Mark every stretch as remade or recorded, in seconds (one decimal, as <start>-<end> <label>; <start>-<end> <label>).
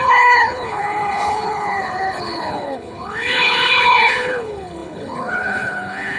0.0-6.2 remade